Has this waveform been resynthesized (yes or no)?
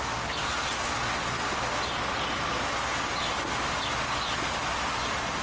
no